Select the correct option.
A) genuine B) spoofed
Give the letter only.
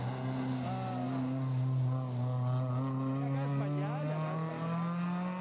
A